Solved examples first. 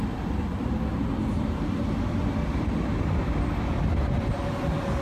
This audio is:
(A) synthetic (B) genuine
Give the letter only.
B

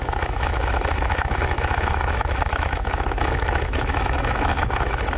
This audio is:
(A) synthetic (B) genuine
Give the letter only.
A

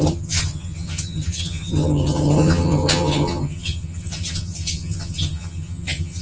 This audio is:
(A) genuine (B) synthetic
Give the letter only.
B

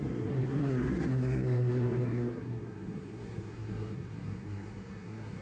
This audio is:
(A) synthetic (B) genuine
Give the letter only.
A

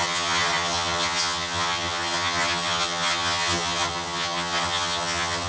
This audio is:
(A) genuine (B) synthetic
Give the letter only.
B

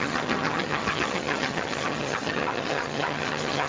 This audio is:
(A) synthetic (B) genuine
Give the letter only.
A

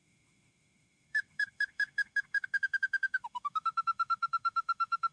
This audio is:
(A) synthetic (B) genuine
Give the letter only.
A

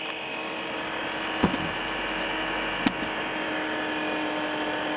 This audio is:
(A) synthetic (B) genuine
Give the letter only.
B